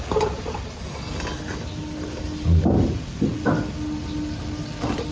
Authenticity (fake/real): real